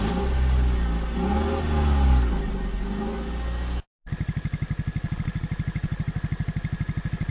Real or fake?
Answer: real